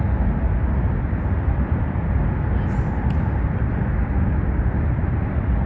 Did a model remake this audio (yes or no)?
no